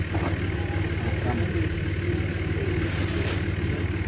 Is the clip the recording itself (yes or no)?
yes